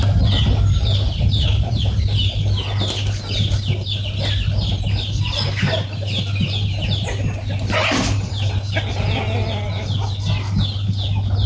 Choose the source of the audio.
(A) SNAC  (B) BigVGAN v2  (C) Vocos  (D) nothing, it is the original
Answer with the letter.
D